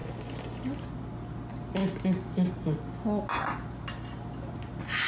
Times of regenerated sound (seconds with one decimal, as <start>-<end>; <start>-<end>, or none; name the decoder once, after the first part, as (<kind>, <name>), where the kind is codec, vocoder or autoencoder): none